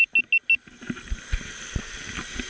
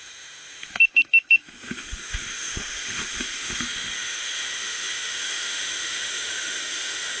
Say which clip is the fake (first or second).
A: second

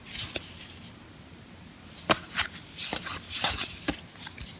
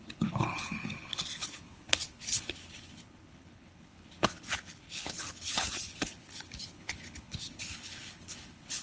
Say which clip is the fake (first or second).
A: second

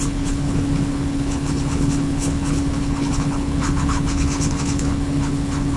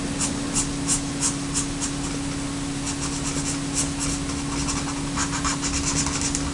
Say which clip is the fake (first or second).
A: first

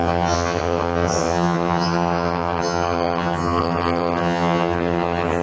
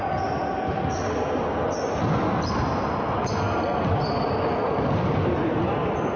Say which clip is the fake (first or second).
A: first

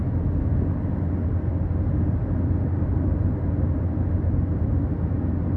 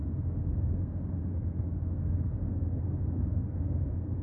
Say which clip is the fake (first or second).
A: second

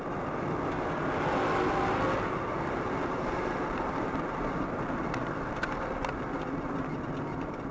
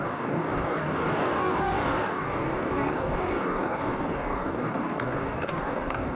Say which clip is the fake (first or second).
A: second